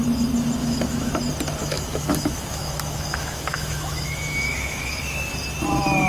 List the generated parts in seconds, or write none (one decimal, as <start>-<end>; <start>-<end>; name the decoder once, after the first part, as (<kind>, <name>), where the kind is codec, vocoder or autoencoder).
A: 0.6-1.1 (autoencoder, DAC-VAE); 1.6-5.3